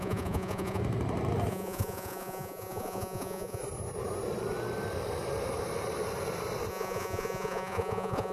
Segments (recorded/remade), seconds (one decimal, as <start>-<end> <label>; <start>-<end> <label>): 0.0-0.8 remade; 0.8-1.5 recorded; 1.5-3.6 remade; 3.6-6.7 recorded; 6.7-8.3 remade